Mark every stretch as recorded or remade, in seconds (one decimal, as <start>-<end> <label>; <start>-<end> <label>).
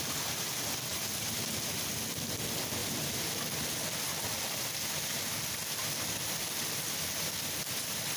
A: 0.0-8.2 recorded